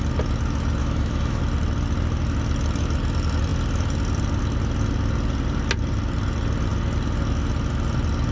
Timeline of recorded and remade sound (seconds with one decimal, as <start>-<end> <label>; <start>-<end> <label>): 0.0-0.8 recorded; 0.8-1.4 remade; 1.4-8.3 recorded